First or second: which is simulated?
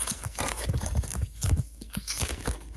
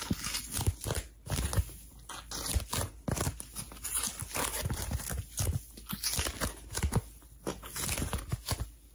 first